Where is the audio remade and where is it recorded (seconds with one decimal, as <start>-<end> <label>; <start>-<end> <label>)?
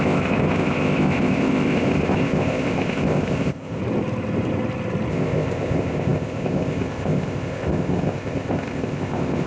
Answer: 0.0-3.8 remade; 3.8-5.1 recorded; 5.1-9.5 remade